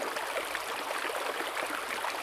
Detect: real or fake real